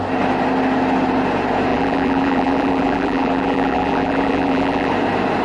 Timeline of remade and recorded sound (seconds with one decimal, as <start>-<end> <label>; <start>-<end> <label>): 0.0-1.7 recorded; 1.7-4.9 remade; 4.9-5.4 recorded